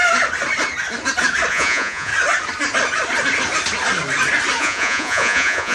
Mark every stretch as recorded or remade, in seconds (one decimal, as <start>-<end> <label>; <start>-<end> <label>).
0.0-1.5 recorded; 1.5-2.1 remade; 2.1-4.6 recorded; 4.6-5.7 remade